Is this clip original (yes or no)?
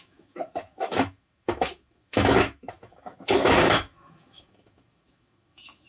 no